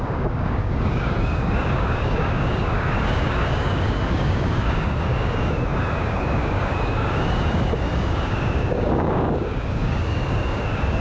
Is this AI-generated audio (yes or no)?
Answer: yes